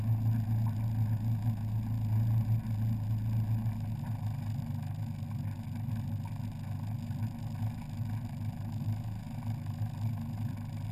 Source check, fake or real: real